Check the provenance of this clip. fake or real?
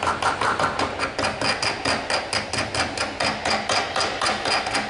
real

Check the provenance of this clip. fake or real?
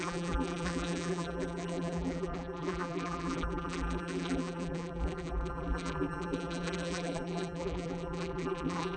fake